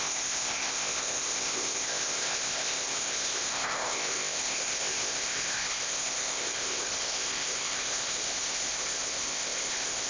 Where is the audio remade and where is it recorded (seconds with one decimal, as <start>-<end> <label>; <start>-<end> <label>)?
0.0-10.1 remade